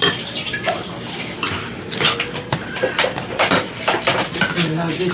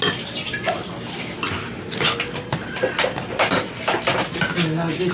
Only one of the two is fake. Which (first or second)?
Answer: first